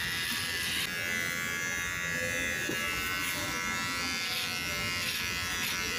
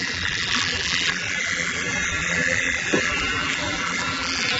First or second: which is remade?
second